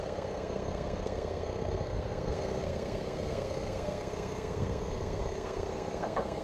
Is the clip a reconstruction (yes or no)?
yes